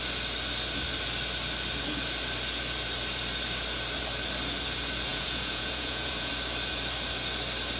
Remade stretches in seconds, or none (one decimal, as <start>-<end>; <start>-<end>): 5.1-6.3